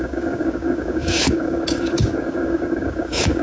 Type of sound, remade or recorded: remade